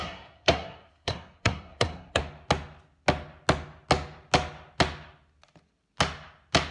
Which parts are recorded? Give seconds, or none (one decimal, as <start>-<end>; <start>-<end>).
2.2-6.7